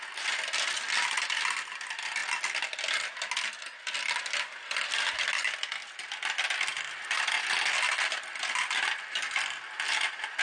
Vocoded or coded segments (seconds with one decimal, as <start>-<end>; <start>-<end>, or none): none